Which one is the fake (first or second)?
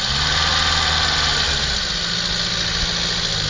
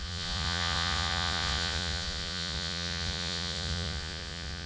second